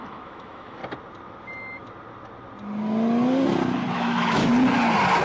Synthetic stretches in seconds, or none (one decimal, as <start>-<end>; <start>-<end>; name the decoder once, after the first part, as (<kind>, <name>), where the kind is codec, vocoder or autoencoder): 0.0-0.8 (autoencoder, DAC-VAE); 3.9-4.5